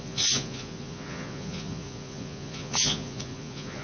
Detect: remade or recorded remade